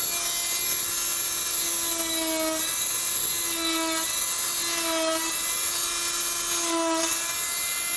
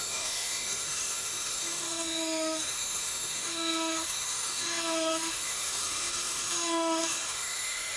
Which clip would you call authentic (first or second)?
first